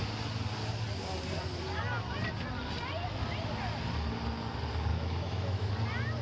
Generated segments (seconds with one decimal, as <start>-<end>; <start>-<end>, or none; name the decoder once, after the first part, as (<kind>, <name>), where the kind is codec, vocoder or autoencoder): 4.9-5.7 (autoencoder, DAC-VAE)